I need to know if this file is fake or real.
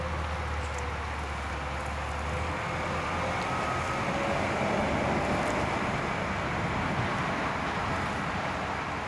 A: real